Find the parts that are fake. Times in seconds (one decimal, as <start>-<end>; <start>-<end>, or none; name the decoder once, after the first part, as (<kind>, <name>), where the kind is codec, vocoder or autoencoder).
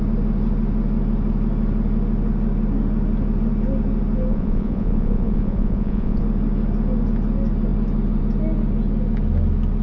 4.3-6.2 (vocoder, Vocos)